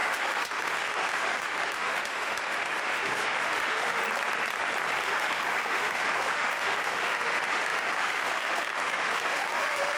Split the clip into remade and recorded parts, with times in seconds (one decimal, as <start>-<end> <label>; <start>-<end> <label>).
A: 0.0-4.0 remade; 4.0-5.0 recorded; 5.0-10.0 remade

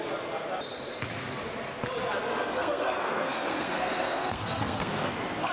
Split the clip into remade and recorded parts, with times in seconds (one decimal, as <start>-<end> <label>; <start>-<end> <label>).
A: 0.0-2.3 recorded; 2.3-5.5 remade

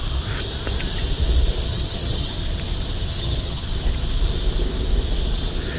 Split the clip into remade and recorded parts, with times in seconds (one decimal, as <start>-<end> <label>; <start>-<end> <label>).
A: 0.0-1.7 recorded; 1.7-2.3 remade; 2.3-3.1 recorded; 3.1-3.7 remade; 3.7-5.8 recorded

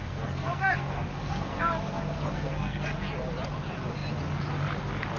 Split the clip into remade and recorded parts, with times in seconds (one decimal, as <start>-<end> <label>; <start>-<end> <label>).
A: 0.0-3.1 remade; 3.1-5.2 recorded

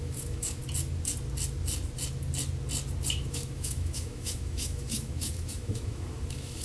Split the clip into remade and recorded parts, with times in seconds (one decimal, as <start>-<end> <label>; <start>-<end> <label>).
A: 0.0-0.6 remade; 0.6-3.2 recorded; 3.2-6.6 remade

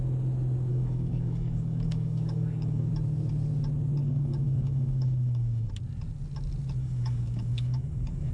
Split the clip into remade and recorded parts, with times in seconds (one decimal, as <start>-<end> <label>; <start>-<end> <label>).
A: 0.0-0.7 recorded; 0.7-2.9 remade; 2.9-4.0 recorded; 4.0-5.7 remade; 5.7-6.8 recorded; 6.8-8.3 remade

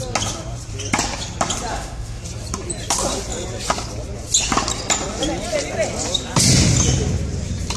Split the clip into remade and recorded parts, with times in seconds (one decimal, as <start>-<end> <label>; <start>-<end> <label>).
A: 0.0-1.7 recorded; 1.7-2.2 remade; 2.2-7.8 recorded